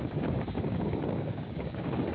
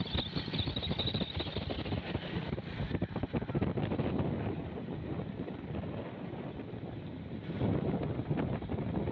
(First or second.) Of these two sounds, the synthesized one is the first